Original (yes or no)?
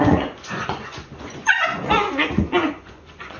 no